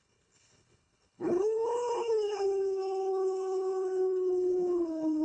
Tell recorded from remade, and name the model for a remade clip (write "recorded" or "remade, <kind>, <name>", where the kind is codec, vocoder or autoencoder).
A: remade, codec, HILCodec